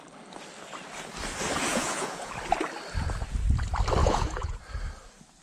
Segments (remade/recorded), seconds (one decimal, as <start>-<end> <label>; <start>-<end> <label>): 0.0-1.7 recorded; 1.7-2.3 remade; 2.3-4.0 recorded; 4.0-4.6 remade; 4.6-5.4 recorded